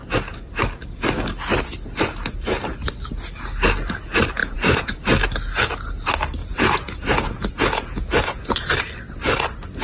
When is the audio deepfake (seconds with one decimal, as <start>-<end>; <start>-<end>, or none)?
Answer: 4.4-5.0; 6.4-8.7